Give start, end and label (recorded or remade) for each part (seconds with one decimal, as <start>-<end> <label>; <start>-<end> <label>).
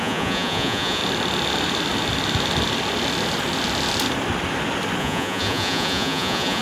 0.0-1.0 remade; 1.0-5.0 recorded; 5.0-6.6 remade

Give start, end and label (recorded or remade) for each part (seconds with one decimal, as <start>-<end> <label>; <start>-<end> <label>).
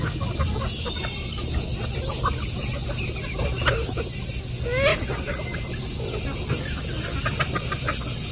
0.0-8.3 recorded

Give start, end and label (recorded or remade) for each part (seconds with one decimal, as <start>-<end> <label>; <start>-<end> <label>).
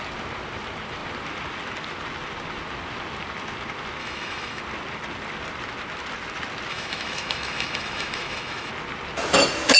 0.0-4.0 recorded; 4.0-4.6 remade; 4.6-6.7 recorded; 6.7-8.7 remade; 8.7-9.8 recorded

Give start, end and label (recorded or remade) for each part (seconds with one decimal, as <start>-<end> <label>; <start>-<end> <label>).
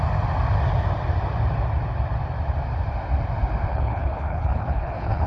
0.0-3.7 recorded; 3.7-5.3 remade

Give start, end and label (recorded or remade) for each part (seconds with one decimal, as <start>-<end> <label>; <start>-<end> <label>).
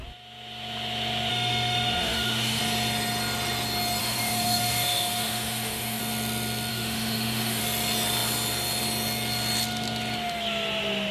0.0-1.3 recorded; 1.3-2.6 remade; 2.6-4.0 recorded; 4.0-6.0 remade; 6.0-6.7 recorded; 6.7-7.6 remade; 7.6-11.1 recorded